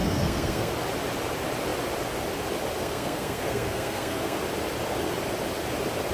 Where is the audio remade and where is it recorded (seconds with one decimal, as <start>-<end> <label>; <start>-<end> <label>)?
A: 0.0-0.7 remade; 0.7-2.8 recorded; 2.8-4.4 remade; 4.4-6.1 recorded